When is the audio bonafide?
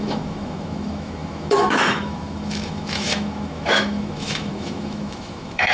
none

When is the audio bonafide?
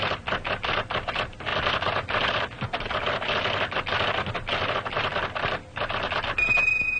0.0-7.0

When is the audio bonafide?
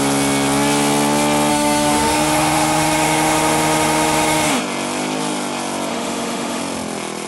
0.0-1.5; 4.6-5.9; 6.6-7.3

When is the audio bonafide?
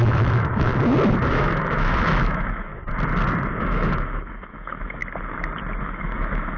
0.7-1.3; 2.7-3.6; 5.0-5.8